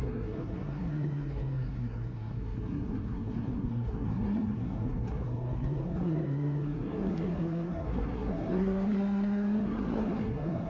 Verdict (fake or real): fake